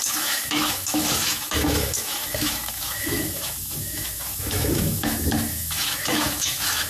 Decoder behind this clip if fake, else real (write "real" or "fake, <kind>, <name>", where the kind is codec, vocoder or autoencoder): fake, autoencoder, DAC-VAE